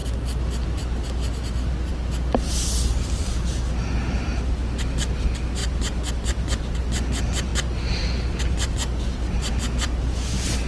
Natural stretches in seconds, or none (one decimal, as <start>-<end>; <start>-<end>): 0.0-10.7